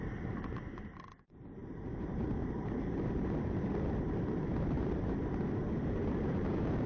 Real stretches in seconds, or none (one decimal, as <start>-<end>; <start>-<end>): none